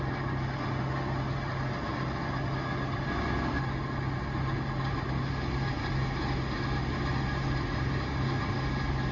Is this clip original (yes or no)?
yes